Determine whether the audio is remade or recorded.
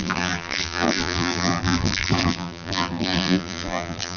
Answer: remade